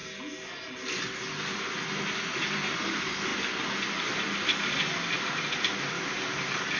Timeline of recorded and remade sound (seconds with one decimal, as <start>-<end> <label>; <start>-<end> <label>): 0.0-6.8 recorded